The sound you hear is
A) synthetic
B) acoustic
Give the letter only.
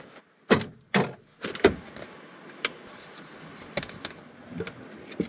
B